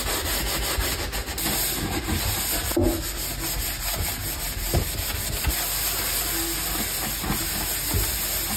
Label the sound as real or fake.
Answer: real